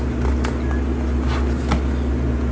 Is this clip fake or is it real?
real